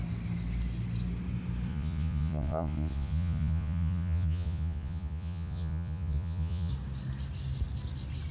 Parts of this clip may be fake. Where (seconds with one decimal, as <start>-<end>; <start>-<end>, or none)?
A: 1.7-6.7